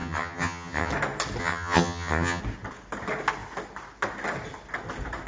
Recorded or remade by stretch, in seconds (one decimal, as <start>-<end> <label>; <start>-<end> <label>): 0.0-0.9 remade; 0.9-1.4 recorded; 1.4-2.4 remade; 2.4-5.3 recorded